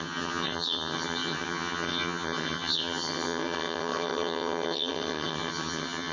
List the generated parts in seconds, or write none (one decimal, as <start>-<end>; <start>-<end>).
0.0-6.1